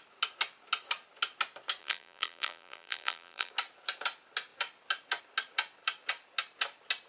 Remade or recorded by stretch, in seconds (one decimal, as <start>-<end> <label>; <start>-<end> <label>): 0.0-1.8 recorded; 1.8-3.5 remade; 3.5-7.1 recorded